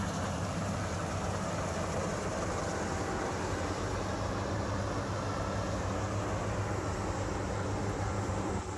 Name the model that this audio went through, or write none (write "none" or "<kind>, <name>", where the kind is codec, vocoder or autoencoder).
none